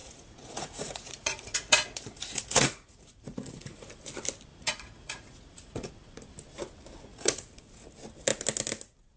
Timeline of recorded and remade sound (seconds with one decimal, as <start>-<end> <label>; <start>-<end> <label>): 0.0-3.9 remade; 3.9-4.5 recorded; 4.5-5.9 remade; 5.9-7.1 recorded; 7.1-7.7 remade; 7.7-9.2 recorded